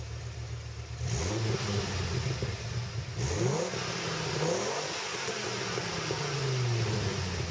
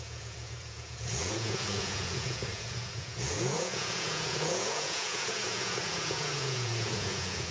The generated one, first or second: second